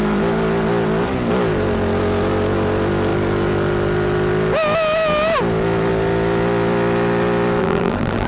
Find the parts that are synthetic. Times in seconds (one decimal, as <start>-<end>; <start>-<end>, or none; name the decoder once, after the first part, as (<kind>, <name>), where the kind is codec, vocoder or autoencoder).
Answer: 7.6-8.3 (vocoder, BigVGAN v2)